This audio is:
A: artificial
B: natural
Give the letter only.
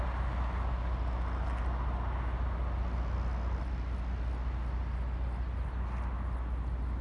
B